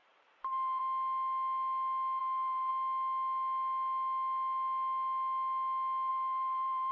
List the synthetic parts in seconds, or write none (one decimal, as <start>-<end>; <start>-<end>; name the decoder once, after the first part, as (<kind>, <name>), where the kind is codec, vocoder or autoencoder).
0.0-0.8 (vocoder, BigVGAN v2); 2.2-2.7; 6.1-6.9